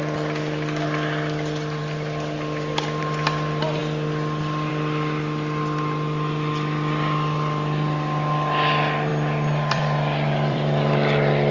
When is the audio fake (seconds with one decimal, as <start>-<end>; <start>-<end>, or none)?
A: 9.1-11.5